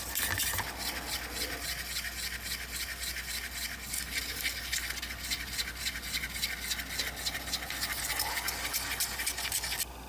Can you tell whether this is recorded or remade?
recorded